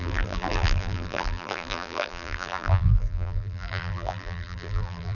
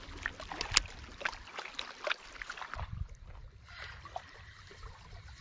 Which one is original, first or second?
second